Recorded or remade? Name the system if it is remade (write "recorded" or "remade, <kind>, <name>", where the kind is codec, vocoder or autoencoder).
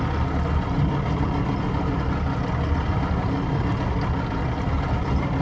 recorded